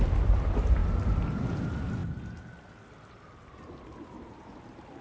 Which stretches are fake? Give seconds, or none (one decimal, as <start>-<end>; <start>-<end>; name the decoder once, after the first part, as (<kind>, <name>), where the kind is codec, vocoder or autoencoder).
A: none